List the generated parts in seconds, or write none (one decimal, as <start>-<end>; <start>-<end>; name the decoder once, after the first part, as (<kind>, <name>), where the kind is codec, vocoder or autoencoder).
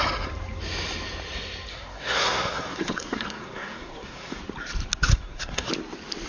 1.7-4.4 (codec, SNAC); 5.1-5.7